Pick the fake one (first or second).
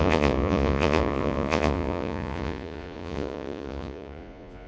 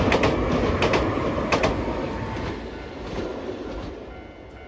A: first